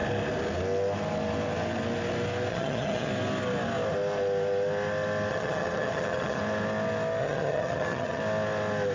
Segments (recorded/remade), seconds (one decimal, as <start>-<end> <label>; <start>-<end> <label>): 0.0-2.5 recorded; 2.5-3.1 remade; 3.1-5.3 recorded; 5.3-6.4 remade; 6.4-7.2 recorded; 7.2-8.2 remade; 8.2-8.9 recorded